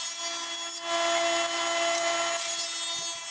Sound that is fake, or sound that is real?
real